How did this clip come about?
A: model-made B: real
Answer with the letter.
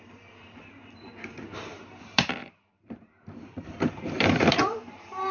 A